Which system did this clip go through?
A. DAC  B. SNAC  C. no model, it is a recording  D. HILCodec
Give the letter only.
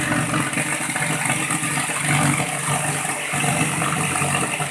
C